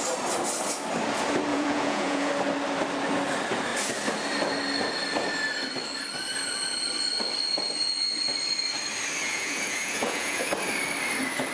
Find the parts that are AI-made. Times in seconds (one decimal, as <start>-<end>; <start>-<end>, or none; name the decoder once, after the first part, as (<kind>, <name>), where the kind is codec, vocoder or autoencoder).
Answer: 1.5-2.3 (vocoder, Vocos); 9.2-10.5